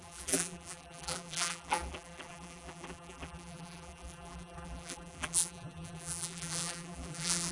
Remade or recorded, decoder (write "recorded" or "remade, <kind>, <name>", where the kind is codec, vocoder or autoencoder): remade, vocoder, BigVGAN v2